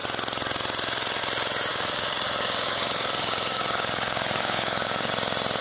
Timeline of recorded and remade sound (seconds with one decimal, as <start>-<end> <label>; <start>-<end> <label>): 0.0-1.7 recorded; 1.7-5.1 remade; 5.1-5.6 recorded